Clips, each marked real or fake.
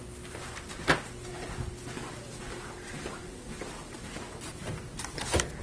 real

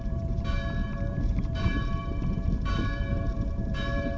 fake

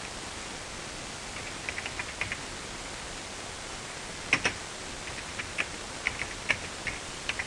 real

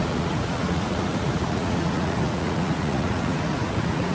fake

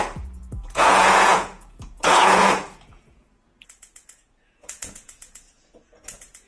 fake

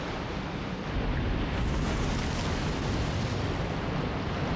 real